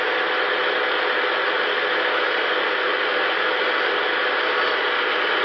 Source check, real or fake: real